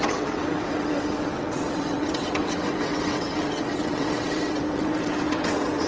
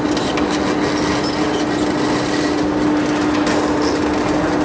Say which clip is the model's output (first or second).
first